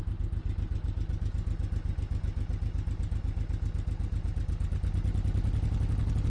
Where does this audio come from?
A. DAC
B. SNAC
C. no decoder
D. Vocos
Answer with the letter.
C